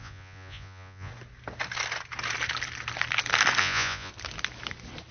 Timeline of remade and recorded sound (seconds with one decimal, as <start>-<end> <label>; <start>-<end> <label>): 0.0-1.1 remade; 1.1-3.6 recorded; 3.6-4.1 remade; 4.1-5.1 recorded